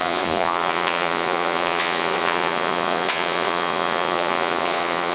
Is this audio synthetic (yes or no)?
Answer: yes